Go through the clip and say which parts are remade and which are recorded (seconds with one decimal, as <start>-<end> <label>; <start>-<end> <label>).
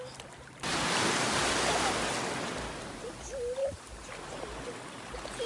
0.0-5.5 recorded